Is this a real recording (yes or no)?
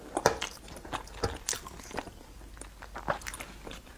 yes